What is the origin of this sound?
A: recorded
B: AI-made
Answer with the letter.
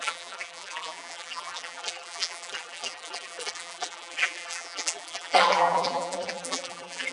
B